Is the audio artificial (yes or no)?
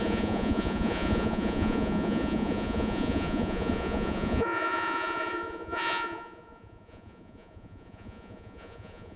yes